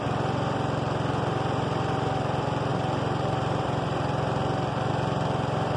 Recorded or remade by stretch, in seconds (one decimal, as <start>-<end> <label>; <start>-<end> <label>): 0.0-5.8 recorded